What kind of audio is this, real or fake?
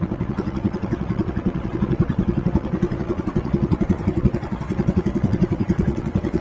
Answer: fake